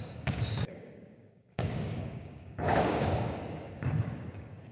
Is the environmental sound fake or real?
fake